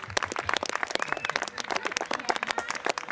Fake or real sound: real